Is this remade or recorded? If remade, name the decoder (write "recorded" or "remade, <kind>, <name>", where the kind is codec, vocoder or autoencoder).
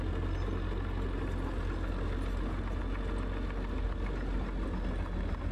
recorded